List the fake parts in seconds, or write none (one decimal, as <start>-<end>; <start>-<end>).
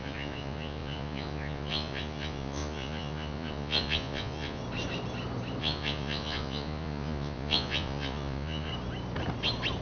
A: 0.0-4.6; 5.6-8.7